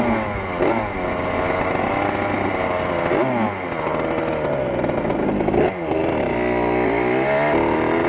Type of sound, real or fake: real